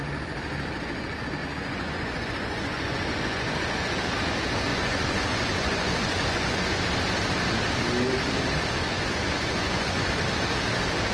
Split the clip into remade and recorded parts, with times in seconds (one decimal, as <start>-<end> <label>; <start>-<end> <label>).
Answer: 0.0-1.4 recorded; 1.4-4.0 remade; 4.0-4.7 recorded; 4.7-6.8 remade; 6.8-8.8 recorded; 8.8-10.1 remade; 10.1-11.1 recorded